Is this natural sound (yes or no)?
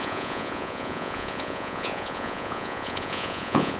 no